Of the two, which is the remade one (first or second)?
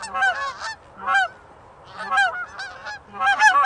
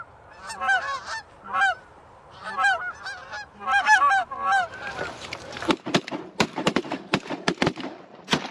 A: second